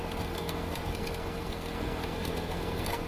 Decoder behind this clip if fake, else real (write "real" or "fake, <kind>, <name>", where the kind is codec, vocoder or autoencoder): fake, codec, SNAC